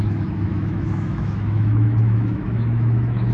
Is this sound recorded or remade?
remade